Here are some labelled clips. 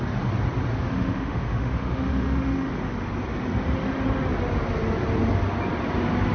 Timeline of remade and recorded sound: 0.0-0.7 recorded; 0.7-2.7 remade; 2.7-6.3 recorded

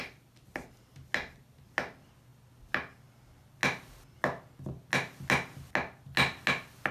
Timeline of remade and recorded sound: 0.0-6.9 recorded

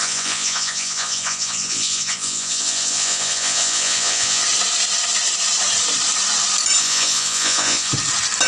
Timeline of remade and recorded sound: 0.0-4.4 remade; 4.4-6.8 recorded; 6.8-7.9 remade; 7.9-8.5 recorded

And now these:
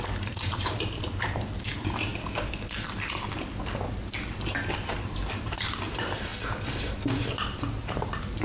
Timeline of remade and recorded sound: 0.0-2.1 remade; 2.1-4.9 recorded; 4.9-6.3 remade; 6.3-7.1 recorded; 7.1-8.4 remade

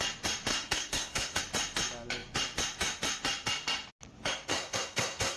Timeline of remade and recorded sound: 0.0-0.5 recorded; 0.5-1.4 remade; 1.4-4.5 recorded; 4.5-5.4 remade

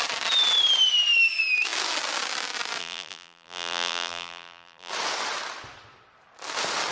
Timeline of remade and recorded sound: 0.0-2.8 recorded; 2.8-4.9 remade; 4.9-6.9 recorded

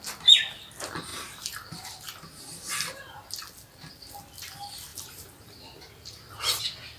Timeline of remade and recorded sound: 0.0-1.1 recorded; 1.1-3.3 remade; 3.3-4.9 recorded; 4.9-5.6 remade; 5.6-7.0 recorded